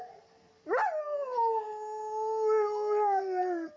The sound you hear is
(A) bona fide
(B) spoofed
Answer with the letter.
A